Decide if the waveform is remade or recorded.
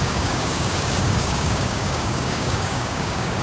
remade